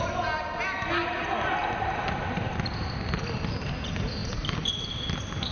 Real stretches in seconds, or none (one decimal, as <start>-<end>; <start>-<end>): 0.0-1.6; 2.5-5.5

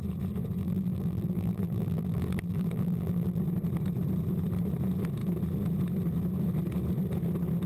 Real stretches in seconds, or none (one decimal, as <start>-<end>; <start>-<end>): 0.0-0.6; 3.4-7.7

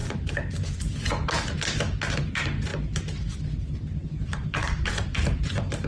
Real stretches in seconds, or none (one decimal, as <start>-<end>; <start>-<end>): 0.9-2.7; 3.4-4.0

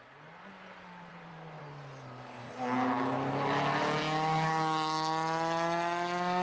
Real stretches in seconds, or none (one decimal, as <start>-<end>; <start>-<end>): 0.0-1.1; 1.6-6.4

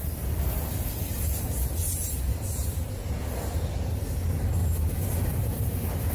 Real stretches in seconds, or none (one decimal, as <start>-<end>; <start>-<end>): 3.7-4.6